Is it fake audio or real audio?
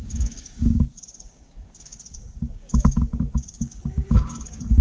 fake